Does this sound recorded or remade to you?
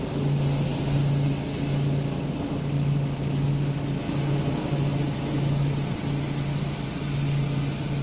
recorded